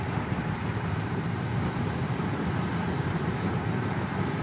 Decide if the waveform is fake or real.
fake